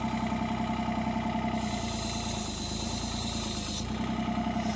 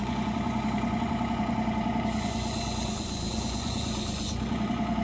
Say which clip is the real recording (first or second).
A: first